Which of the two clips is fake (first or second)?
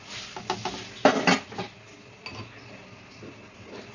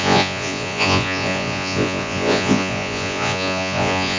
second